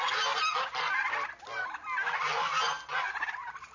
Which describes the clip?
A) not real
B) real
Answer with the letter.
B